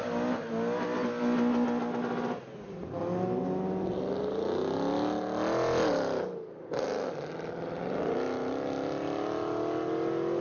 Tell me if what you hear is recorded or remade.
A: recorded